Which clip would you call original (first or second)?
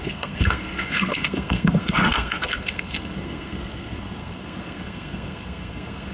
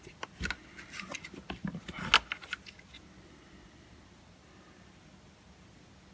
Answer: second